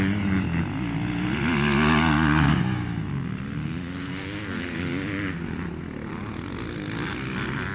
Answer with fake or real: real